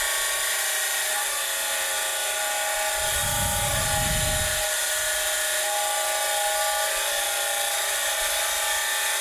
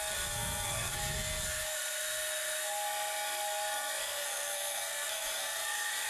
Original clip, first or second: first